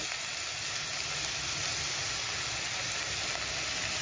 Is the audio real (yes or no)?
yes